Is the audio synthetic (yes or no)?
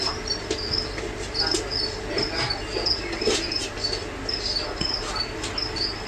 no